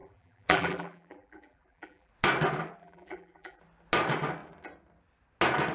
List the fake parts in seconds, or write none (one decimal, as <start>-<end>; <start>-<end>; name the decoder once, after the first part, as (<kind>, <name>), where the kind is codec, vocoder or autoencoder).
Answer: 0.0-2.1 (vocoder, BigVGAN v2); 2.8-3.6